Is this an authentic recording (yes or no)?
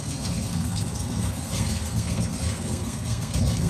no